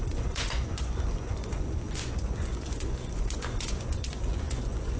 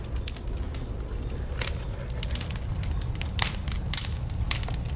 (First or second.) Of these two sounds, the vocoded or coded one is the first